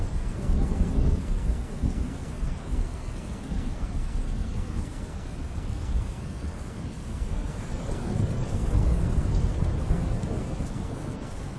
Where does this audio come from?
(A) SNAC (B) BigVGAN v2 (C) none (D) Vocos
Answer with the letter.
A